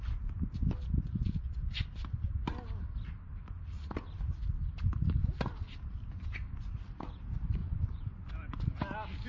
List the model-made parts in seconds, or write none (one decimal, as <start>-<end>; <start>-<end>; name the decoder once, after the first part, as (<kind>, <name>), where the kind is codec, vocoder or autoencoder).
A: 7.6-8.3 (vocoder, Vocos)